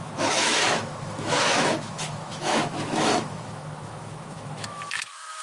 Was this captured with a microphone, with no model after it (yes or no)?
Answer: no